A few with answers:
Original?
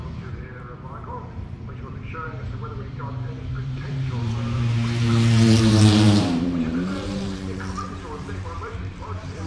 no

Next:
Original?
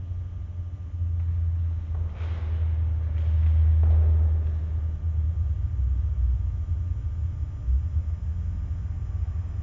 yes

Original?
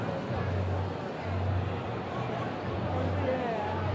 yes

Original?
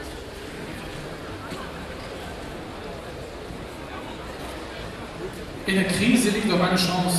yes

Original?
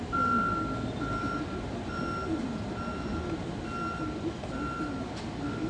yes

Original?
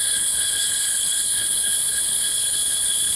no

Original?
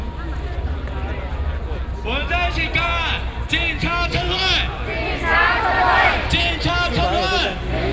yes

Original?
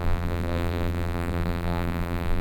no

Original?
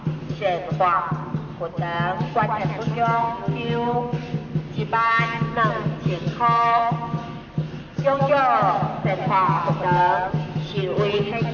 yes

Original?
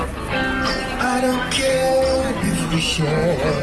yes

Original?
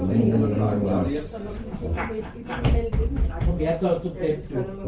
no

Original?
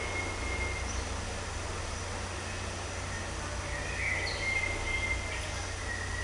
yes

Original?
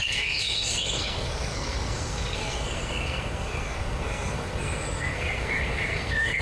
no